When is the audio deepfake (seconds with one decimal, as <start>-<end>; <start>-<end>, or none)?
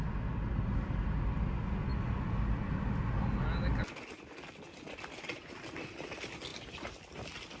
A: 6.5-7.0